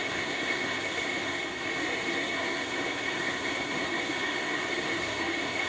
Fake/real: fake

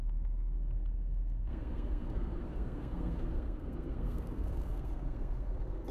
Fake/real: fake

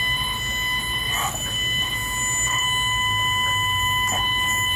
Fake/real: real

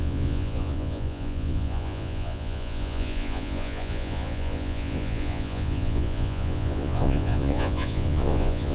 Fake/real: fake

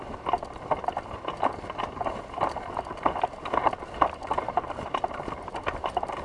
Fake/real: real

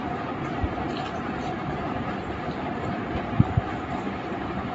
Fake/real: fake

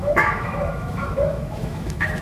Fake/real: fake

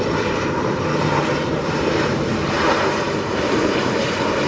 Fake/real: fake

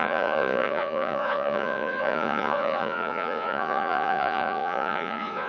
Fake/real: fake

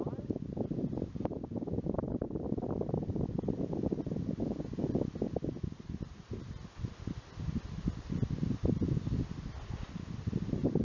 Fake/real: real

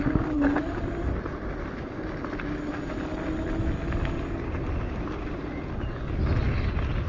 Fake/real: real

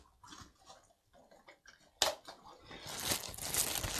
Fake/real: real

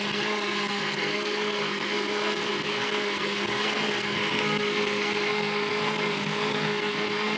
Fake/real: fake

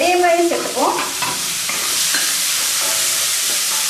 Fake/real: fake